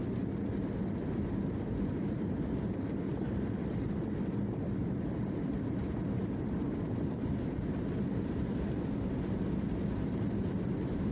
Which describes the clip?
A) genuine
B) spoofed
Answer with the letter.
B